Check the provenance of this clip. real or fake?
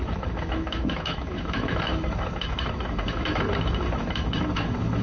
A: fake